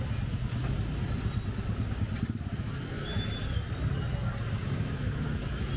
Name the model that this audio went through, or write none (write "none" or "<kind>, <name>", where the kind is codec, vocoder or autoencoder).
none